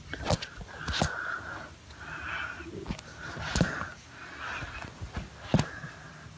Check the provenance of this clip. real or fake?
real